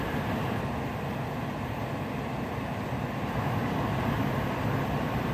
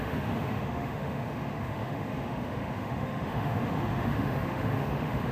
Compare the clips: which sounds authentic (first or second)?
first